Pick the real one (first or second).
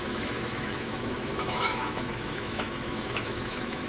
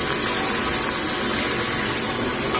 second